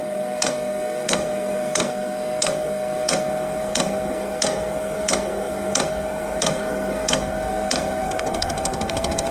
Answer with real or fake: fake